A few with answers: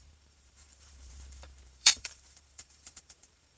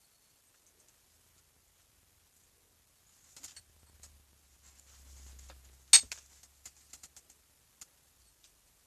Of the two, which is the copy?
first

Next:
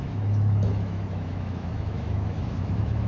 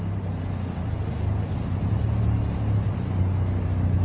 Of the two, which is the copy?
first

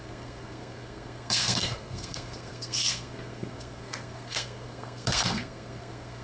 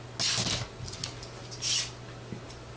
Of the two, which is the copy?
first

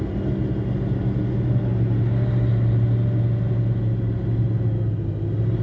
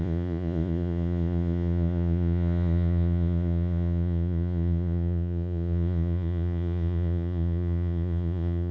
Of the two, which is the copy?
second